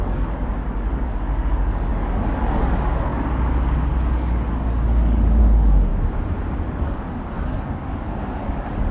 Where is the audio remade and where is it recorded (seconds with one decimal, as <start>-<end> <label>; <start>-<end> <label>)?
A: 0.0-5.9 remade; 5.9-6.7 recorded; 6.7-8.9 remade